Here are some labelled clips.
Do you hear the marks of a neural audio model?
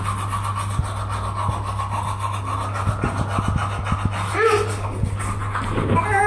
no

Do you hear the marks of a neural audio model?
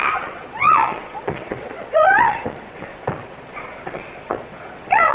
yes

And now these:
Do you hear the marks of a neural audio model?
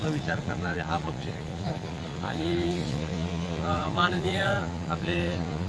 yes